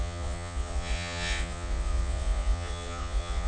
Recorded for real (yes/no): no